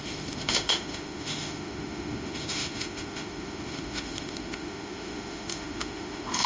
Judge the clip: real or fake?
fake